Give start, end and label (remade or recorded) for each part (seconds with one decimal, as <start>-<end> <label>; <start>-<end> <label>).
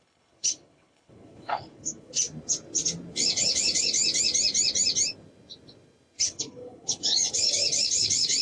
0.0-2.2 remade; 2.2-3.1 recorded; 3.1-4.0 remade; 4.0-6.2 recorded; 6.2-8.4 remade